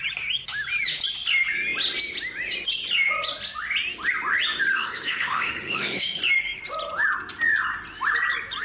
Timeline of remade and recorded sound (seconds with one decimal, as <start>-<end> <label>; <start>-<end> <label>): 0.0-4.7 recorded; 4.7-6.2 remade; 6.2-8.6 recorded